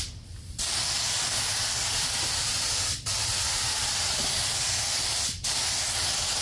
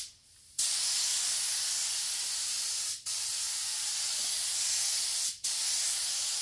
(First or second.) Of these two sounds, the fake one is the first